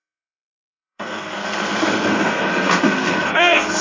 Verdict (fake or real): fake